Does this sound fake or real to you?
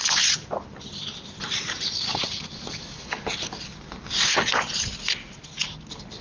real